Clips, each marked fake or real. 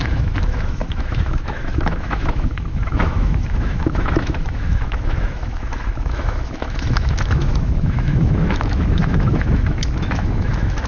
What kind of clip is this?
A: fake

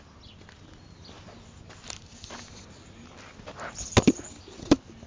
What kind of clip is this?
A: real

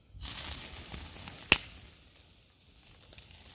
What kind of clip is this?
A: real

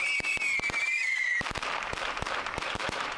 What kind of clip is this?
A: fake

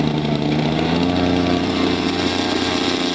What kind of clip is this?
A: fake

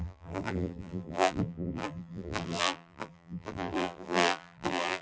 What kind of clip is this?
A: fake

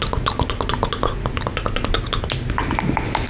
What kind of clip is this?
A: real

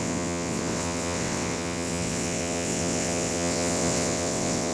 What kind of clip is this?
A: fake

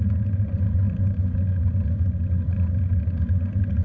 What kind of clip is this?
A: real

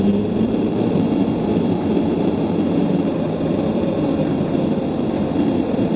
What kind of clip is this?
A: fake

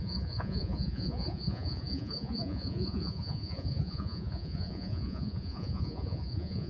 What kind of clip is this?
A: fake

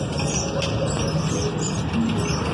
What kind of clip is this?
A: real